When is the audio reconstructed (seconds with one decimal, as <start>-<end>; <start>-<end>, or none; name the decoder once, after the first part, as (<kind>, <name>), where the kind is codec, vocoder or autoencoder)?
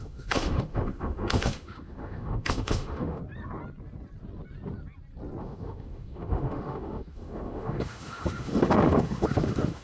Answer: 0.0-3.2 (autoencoder, DAC-VAE); 5.4-9.8